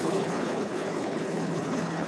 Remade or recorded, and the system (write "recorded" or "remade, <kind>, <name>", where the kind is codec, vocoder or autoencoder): remade, codec, HILCodec